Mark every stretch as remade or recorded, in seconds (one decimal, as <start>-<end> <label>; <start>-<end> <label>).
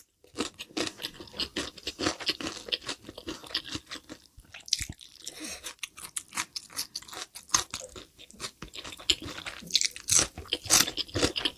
0.0-11.6 recorded